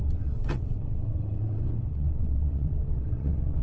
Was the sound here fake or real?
fake